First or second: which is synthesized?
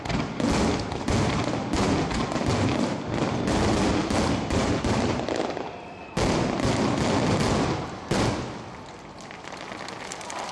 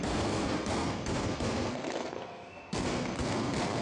second